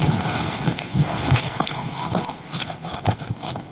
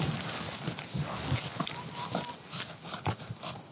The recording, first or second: second